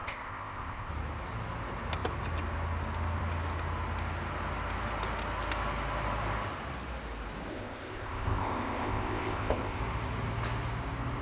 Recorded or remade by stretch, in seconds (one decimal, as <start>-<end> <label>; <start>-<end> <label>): 0.0-0.9 remade; 0.9-7.5 recorded; 7.5-9.8 remade; 9.8-11.2 recorded